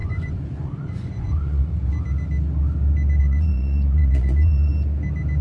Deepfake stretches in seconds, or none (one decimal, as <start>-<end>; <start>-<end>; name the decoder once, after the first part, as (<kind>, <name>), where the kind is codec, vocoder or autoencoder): 0.0-1.7 (vocoder, Vocos); 3.2-4.7